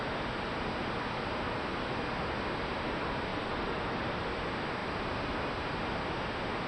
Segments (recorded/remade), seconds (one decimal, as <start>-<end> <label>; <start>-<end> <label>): 0.0-3.3 recorded; 3.3-4.2 remade; 4.2-6.7 recorded